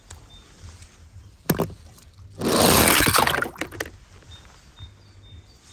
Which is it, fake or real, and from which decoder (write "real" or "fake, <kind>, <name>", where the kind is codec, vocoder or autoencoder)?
real